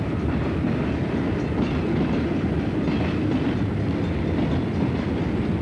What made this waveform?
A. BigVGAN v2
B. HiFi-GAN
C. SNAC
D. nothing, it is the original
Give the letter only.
A